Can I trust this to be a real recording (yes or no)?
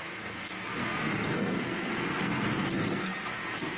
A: no